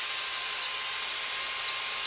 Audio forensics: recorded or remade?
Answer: recorded